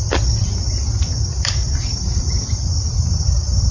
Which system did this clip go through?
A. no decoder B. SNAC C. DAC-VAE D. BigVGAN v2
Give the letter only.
A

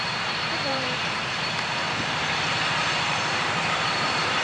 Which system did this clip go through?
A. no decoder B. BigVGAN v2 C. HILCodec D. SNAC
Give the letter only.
B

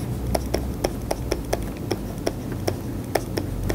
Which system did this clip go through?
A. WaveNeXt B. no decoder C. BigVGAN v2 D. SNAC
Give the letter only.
B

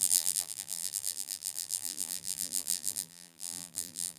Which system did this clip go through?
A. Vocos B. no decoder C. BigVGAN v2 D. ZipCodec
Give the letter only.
C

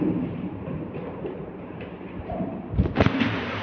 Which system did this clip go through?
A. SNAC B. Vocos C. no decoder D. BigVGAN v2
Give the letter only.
D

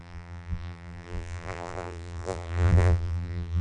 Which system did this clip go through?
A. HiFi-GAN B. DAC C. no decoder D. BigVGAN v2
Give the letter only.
D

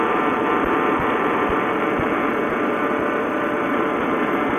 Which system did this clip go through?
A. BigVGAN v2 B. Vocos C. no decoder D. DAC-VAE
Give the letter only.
A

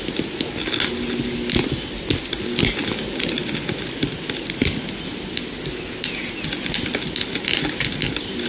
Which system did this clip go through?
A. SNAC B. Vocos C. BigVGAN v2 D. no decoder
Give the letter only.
D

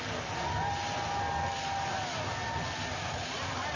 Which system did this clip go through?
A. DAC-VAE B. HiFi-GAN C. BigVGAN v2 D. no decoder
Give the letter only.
D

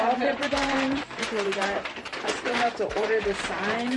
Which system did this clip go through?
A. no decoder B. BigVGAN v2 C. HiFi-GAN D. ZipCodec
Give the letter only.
B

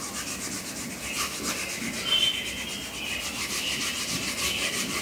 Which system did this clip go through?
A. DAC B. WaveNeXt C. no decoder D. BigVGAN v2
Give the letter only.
C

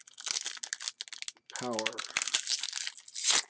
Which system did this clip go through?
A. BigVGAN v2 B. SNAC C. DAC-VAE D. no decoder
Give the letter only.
D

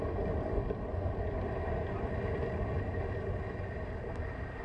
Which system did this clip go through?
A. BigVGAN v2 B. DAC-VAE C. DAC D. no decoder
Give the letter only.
D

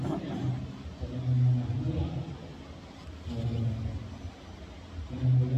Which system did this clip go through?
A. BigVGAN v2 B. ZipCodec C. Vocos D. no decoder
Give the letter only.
D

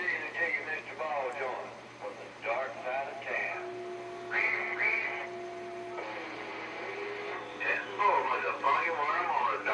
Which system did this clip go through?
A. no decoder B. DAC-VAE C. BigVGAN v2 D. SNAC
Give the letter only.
C